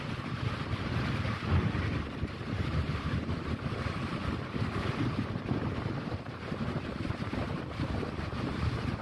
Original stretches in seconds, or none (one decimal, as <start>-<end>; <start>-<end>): 1.9-2.5; 4.1-5.0